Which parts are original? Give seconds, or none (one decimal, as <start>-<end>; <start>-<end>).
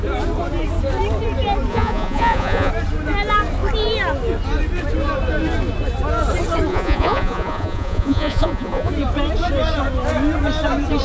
0.0-1.7; 2.7-6.7; 8.9-11.0